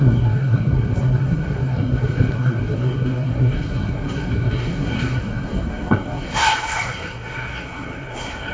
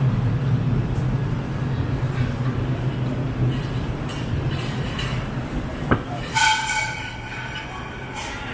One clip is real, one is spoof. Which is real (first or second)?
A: second